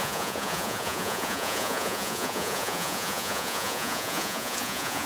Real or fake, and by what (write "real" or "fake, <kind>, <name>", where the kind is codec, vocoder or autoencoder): fake, vocoder, Vocos